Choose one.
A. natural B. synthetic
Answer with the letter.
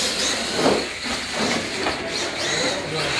A